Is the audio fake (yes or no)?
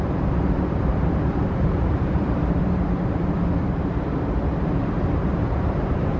yes